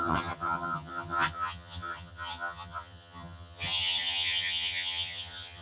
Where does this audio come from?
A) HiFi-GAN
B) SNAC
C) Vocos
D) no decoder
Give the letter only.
A